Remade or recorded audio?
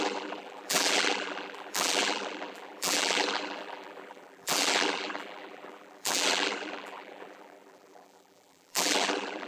remade